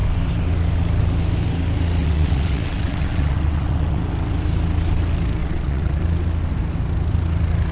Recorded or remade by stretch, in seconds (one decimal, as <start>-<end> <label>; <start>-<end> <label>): 0.0-2.0 recorded; 2.0-4.0 remade; 4.0-5.4 recorded; 5.4-6.0 remade; 6.0-7.7 recorded